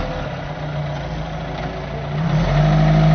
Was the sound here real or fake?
real